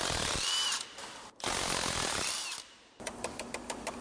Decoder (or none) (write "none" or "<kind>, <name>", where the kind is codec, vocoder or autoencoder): none